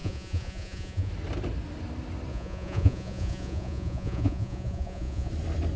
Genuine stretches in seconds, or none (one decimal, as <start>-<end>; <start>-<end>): 1.1-2.3; 5.3-5.8